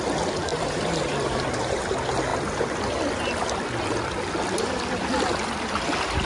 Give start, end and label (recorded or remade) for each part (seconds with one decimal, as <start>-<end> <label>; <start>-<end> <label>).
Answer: 0.0-0.5 recorded; 0.5-1.8 remade; 1.8-6.3 recorded